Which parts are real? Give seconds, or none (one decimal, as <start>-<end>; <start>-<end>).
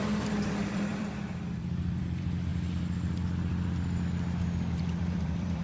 2.5-4.7